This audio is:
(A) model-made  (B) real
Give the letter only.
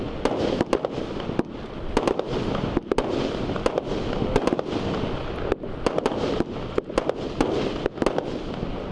B